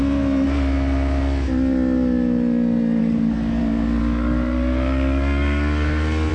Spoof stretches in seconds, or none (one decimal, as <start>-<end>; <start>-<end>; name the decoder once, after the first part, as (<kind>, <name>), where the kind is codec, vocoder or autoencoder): 3.0-3.6 (codec, DAC); 4.0-6.3

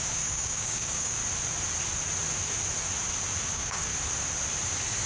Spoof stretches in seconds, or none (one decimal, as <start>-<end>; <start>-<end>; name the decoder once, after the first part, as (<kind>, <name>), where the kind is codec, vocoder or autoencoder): 0.0-1.2 (codec, DAC); 3.5-3.9

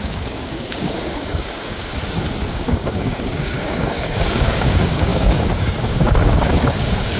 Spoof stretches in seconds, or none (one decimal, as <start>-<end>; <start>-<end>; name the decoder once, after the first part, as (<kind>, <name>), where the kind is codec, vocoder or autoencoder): 0.0-1.9 (codec, DAC); 2.5-7.2

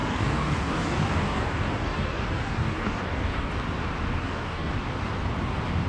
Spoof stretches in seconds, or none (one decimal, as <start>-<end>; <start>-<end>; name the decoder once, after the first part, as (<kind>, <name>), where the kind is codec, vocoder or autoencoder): 0.0-3.5 (codec, DAC); 4.2-4.7